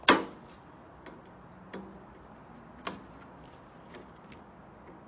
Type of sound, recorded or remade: recorded